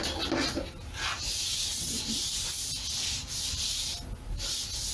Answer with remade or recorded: recorded